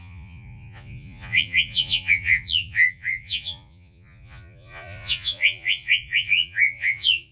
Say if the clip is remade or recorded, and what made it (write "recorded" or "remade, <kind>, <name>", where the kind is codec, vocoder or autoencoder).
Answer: remade, vocoder, Vocos